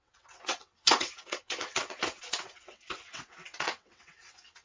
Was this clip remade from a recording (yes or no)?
yes